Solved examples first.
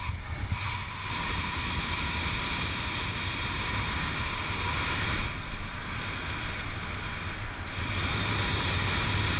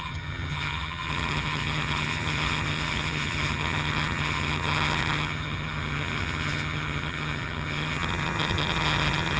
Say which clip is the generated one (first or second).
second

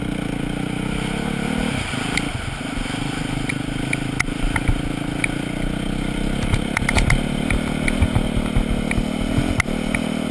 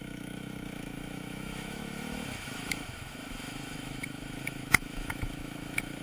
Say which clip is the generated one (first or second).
second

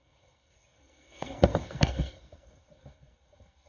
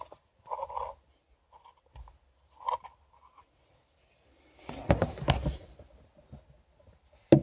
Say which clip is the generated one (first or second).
first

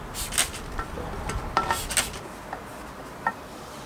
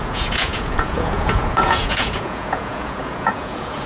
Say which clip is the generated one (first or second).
second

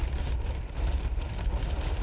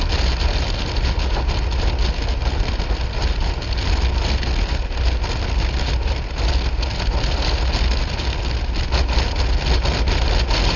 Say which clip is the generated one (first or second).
first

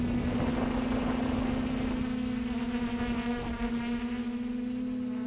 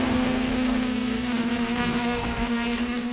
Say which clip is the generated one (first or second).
second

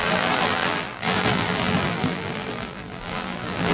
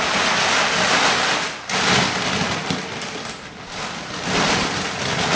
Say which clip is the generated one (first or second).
first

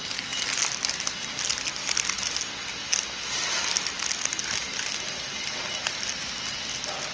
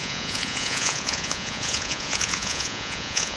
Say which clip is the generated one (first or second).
second